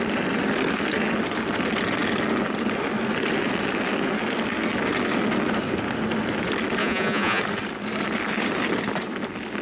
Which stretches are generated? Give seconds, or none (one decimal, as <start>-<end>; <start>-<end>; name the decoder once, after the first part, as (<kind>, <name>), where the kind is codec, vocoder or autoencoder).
6.8-7.4 (vocoder, Vocos)

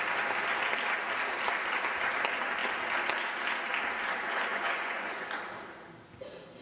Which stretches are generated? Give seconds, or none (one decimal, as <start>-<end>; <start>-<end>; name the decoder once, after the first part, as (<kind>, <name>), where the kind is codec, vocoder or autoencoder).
4.5-5.4 (vocoder, Vocos)

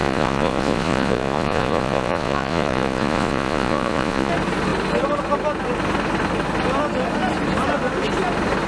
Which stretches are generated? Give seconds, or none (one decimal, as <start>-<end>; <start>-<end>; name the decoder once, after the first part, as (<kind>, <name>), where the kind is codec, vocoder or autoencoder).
0.0-4.3 (vocoder, Vocos)